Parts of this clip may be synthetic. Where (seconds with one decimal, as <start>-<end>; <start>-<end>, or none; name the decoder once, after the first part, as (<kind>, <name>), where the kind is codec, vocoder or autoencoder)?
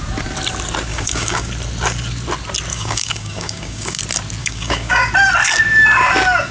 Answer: 0.9-1.5 (codec, DAC); 2.7-4.0; 4.4-5.1